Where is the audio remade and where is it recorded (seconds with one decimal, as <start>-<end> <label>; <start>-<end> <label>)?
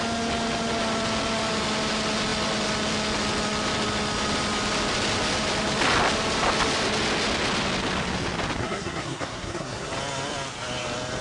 0.0-8.6 recorded; 8.6-9.9 remade; 9.9-11.2 recorded